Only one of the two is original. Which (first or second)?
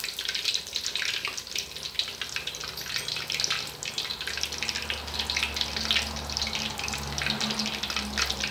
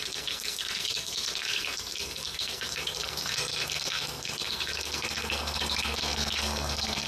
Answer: first